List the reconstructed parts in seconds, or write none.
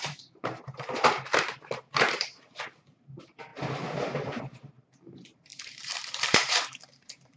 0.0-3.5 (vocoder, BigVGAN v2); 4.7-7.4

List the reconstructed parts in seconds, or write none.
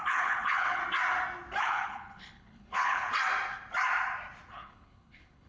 0.0-0.8 (codec, HILCodec); 1.6-3.1; 4.5-5.5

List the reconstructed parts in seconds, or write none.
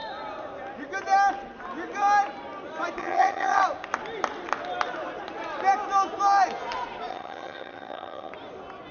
3.0-3.6 (vocoder, HiFi-GAN); 7.1-8.3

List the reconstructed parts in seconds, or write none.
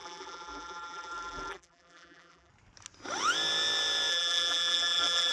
0.0-2.5 (vocoder, BigVGAN v2); 4.1-5.3